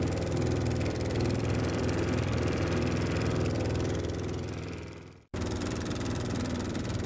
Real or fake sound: fake